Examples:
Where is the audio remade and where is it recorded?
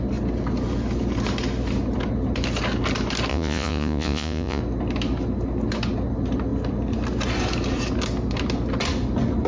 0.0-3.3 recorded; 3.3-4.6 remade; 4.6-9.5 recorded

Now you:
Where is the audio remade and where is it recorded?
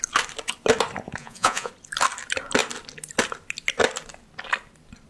0.0-1.2 recorded; 1.2-1.7 remade; 1.7-5.1 recorded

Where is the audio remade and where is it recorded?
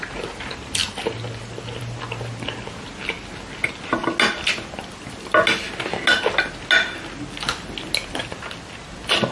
0.0-9.3 recorded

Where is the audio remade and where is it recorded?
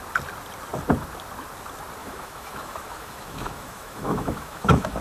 0.0-2.0 recorded; 2.0-5.0 remade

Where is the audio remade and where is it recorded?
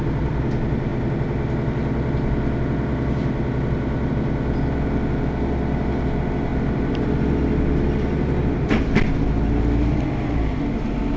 0.0-11.2 recorded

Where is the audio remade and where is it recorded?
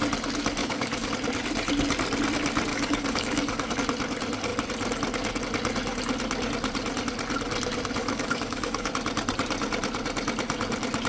0.0-0.6 recorded; 0.6-1.1 remade; 1.1-2.7 recorded; 2.7-3.7 remade; 3.7-8.0 recorded; 8.0-8.9 remade; 8.9-11.1 recorded